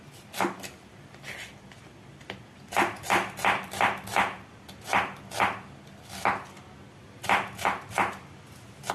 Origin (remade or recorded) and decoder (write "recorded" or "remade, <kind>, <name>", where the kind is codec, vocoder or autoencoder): recorded